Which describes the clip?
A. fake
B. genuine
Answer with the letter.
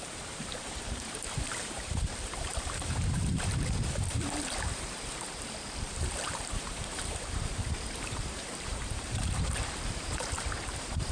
A